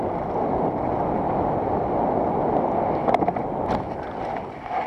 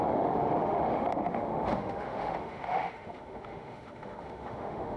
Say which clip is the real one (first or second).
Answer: first